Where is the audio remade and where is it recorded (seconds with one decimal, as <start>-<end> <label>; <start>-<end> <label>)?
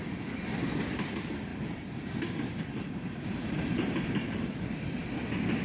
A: 0.0-1.5 recorded; 1.5-4.9 remade; 4.9-5.6 recorded